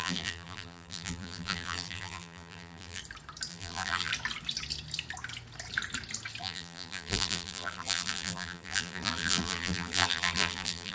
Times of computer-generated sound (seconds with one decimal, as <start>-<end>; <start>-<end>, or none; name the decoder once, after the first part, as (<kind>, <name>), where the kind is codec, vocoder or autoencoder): 0.0-3.0 (vocoder, BigVGAN v2); 3.5-4.1; 6.4-10.9